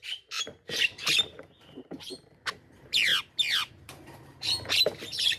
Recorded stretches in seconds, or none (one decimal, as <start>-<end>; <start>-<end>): 3.1-3.7